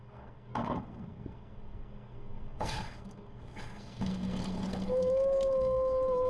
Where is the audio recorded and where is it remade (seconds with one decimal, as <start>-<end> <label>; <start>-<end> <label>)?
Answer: 0.0-6.3 remade